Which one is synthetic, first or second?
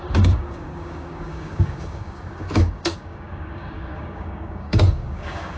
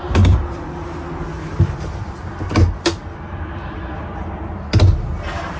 first